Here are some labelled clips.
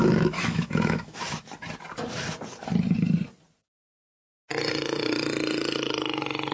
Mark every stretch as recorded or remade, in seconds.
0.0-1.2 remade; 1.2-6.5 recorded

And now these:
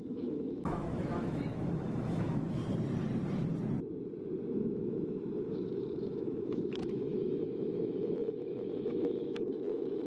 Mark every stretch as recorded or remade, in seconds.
0.0-2.6 remade; 2.6-4.4 recorded; 4.4-10.1 remade